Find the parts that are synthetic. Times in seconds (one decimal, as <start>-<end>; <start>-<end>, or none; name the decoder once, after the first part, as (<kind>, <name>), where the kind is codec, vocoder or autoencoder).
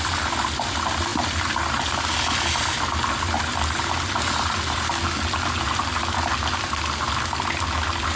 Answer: none